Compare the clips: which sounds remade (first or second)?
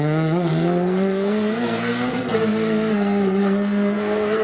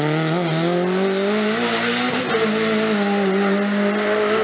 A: first